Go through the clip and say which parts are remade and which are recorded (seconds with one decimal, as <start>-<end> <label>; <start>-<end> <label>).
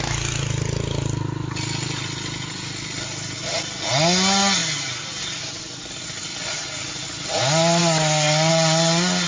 0.0-9.3 recorded